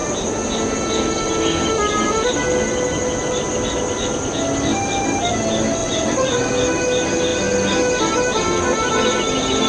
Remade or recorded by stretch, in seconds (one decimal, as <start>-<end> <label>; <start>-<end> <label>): 0.0-5.8 recorded; 5.8-6.5 remade; 6.5-9.7 recorded